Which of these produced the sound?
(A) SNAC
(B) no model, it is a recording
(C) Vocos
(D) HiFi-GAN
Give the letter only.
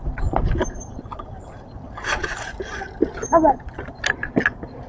B